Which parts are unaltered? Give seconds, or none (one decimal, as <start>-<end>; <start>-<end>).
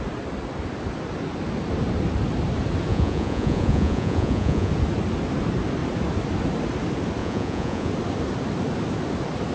0.0-2.9; 4.7-7.2; 7.9-9.5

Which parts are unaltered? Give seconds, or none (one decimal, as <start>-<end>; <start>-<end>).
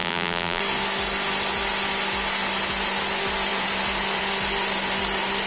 0.6-5.5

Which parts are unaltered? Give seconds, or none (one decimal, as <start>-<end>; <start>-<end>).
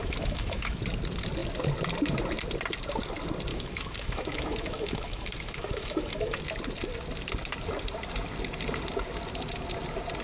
0.8-3.5; 6.4-10.2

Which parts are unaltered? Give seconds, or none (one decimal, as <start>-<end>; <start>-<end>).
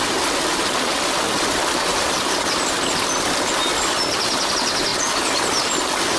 0.0-1.9; 2.7-6.2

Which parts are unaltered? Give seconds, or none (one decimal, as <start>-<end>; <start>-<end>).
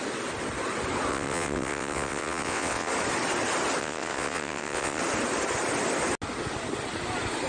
0.0-1.1; 2.9-3.8; 5.0-7.5